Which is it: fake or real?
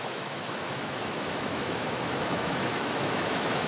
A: fake